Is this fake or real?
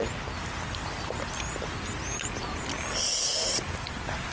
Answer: real